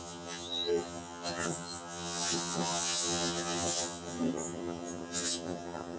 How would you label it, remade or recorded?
remade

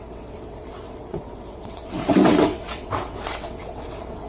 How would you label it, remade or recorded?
remade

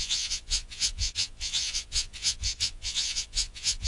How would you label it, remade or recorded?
remade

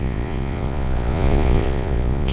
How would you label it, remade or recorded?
remade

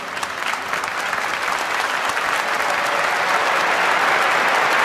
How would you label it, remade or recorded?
recorded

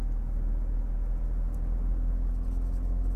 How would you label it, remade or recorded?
recorded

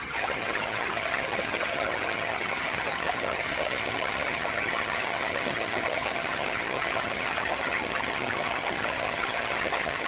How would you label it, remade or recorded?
remade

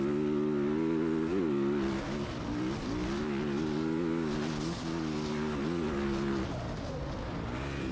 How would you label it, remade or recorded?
recorded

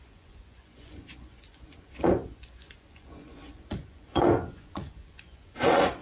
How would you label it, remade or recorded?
remade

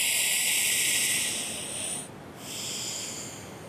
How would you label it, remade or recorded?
recorded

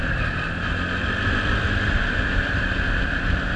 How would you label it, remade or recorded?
recorded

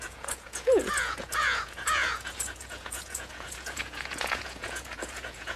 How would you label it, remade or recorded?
remade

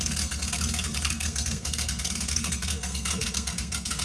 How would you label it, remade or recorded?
remade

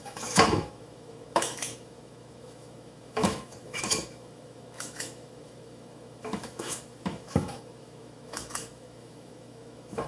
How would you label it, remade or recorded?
remade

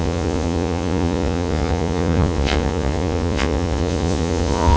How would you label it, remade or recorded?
remade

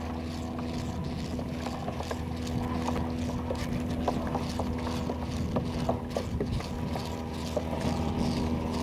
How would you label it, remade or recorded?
recorded